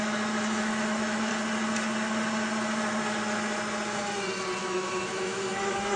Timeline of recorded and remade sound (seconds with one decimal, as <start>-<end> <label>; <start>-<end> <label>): 0.0-1.3 remade; 1.3-4.6 recorded; 4.6-6.0 remade